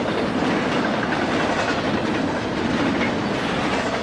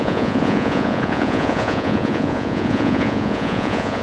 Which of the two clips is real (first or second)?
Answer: first